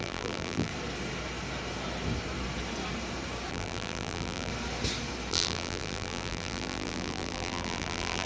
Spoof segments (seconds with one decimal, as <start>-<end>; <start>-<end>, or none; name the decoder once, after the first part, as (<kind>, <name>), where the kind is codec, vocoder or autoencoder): 0.0-0.7 (vocoder, BigVGAN v2); 3.5-4.5; 5.3-8.3